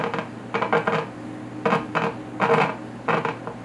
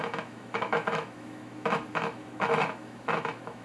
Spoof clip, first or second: second